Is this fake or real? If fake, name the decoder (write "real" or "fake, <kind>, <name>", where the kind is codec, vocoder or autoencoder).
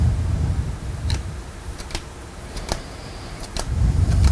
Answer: fake, vocoder, BigVGAN v2